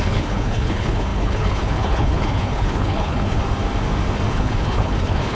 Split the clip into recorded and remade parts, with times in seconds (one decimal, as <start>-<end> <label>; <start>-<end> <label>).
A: 0.0-3.4 remade; 3.4-4.3 recorded; 4.3-5.3 remade